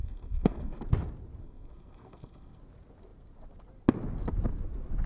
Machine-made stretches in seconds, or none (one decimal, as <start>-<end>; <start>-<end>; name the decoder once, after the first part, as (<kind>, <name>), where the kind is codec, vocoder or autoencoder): 0.0-0.8 (codec, SNAC); 1.4-2.6